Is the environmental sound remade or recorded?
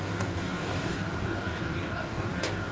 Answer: remade